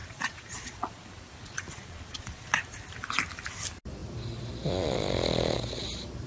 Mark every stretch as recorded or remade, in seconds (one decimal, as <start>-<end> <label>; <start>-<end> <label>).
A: 0.0-0.9 remade; 0.9-1.4 recorded; 1.4-2.6 remade; 2.6-6.3 recorded